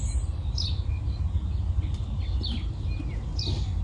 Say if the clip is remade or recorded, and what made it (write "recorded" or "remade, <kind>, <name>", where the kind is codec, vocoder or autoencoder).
recorded